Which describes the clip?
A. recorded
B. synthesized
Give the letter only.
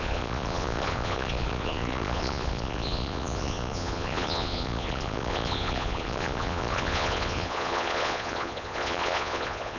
B